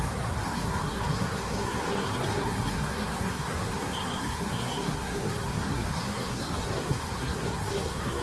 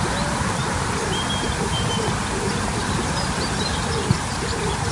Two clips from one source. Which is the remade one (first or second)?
first